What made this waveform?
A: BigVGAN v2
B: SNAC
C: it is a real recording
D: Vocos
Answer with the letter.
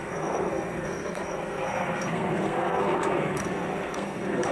B